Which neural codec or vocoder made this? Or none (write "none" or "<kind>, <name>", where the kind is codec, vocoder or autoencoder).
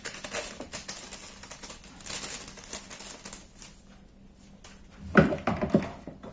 none